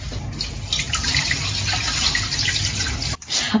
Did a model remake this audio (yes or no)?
no